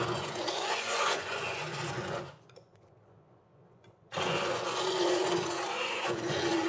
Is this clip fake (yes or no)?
yes